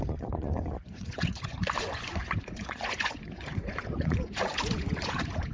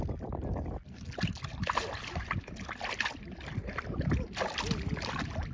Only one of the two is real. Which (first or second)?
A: second